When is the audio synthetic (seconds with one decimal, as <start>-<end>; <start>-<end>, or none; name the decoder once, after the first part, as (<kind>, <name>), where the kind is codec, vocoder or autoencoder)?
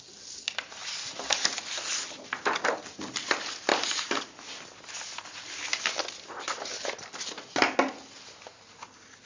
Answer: 3.7-4.2 (vocoder, BigVGAN v2)